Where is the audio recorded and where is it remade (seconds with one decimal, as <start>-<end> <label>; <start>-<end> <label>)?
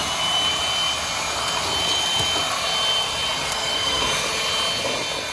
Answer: 0.0-3.5 recorded; 3.5-4.0 remade; 4.0-5.3 recorded